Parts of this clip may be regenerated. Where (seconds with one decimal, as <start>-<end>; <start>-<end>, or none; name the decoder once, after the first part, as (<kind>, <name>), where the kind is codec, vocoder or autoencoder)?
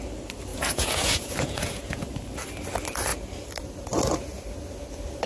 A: 0.5-2.0 (vocoder, Vocos)